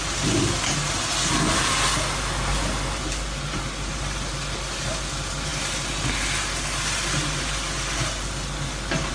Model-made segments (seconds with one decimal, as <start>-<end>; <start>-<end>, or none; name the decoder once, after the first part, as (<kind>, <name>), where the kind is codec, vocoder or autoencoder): none